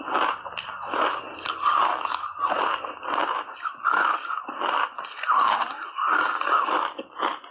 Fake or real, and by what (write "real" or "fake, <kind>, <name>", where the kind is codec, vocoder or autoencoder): real